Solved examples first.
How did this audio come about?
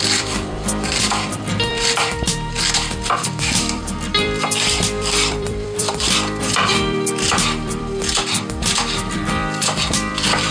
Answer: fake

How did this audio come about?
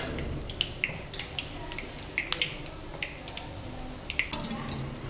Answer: real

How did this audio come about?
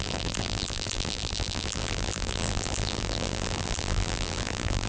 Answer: fake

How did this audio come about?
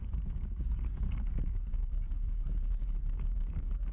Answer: fake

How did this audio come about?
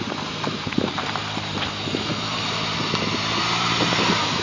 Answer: fake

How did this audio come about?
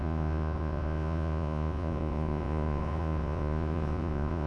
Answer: fake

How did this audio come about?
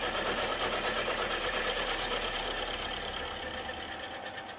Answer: real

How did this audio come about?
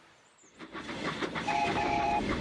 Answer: fake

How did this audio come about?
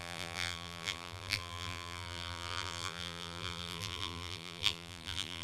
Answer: fake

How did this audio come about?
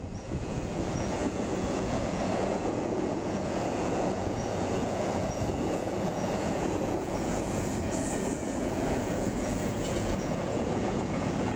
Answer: fake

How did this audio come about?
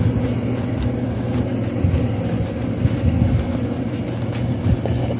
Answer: real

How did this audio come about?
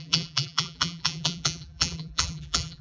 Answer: fake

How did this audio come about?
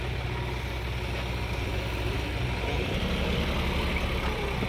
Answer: real